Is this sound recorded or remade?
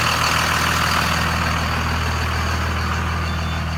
recorded